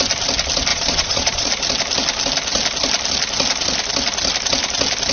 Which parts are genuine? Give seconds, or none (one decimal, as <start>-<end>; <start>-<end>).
0.0-0.7; 1.5-5.1